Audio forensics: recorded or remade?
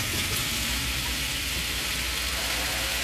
recorded